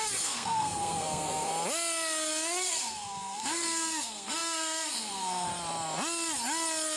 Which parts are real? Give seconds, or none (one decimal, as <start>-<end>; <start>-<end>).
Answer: 1.5-2.6; 5.5-7.0